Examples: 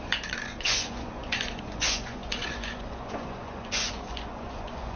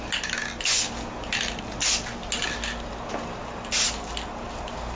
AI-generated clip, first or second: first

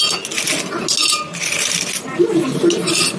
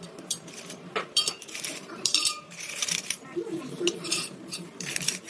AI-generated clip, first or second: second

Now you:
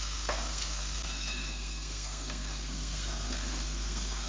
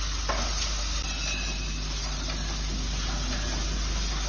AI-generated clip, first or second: first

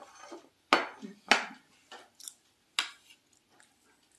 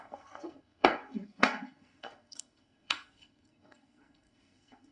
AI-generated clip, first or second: second